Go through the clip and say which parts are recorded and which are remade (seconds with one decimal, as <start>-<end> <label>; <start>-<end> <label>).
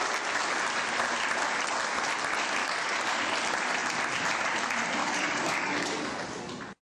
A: 0.0-2.6 recorded; 2.6-3.3 remade; 3.3-5.0 recorded; 5.0-6.3 remade; 6.3-7.0 recorded